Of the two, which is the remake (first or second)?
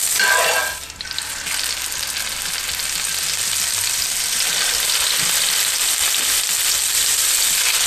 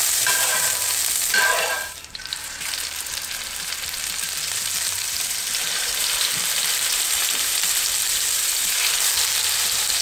second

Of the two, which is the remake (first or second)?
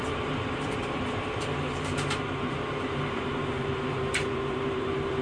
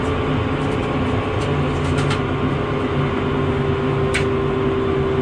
first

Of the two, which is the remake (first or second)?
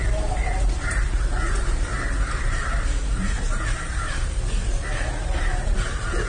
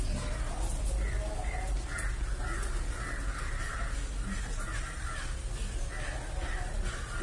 first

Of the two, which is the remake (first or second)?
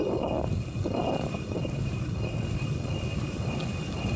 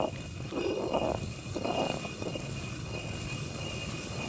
first